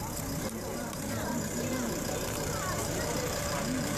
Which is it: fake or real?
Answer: fake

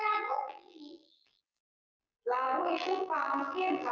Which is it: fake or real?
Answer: fake